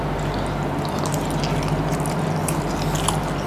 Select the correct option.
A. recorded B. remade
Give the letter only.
A